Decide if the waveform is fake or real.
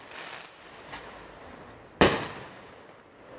real